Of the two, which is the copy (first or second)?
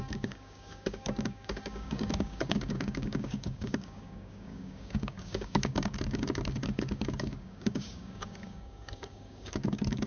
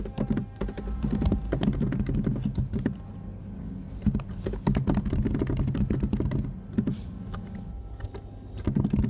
first